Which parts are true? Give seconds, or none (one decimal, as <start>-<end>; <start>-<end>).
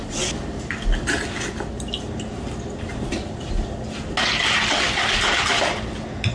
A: 0.0-6.3